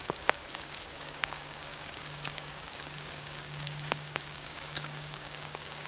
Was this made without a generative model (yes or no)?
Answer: no